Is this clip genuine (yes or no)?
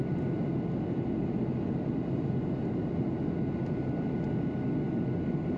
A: yes